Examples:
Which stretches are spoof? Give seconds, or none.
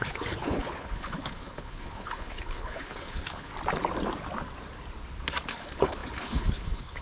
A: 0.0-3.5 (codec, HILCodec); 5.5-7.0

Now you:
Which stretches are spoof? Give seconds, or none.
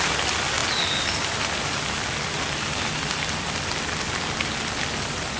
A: none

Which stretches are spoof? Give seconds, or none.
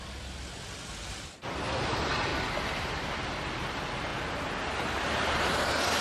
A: 0.0-2.3 (vocoder, BigVGAN v2); 3.1-4.1; 5.0-6.0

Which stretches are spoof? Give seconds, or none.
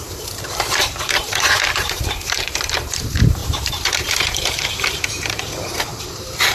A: 0.0-6.5 (vocoder, BigVGAN v2)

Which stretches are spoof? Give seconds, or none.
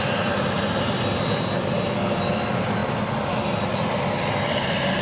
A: none